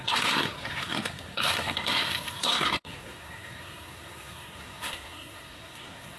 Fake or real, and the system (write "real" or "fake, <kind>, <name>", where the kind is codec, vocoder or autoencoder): fake, codec, SNAC